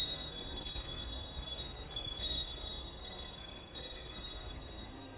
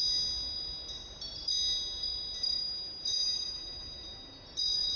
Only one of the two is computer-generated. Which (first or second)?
first